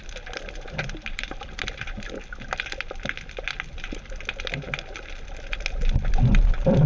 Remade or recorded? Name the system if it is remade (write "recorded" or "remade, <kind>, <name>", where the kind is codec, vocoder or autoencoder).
recorded